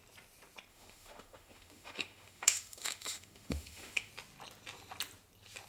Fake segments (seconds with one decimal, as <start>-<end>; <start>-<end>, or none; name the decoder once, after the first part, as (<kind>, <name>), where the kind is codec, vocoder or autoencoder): 0.7-4.1 (autoencoder, DAC-VAE)